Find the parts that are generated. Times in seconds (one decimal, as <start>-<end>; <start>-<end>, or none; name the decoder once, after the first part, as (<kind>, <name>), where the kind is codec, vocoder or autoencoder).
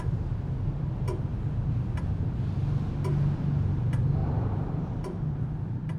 4.2-5.4 (vocoder, BigVGAN v2)